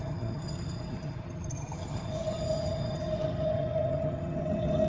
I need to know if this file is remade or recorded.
remade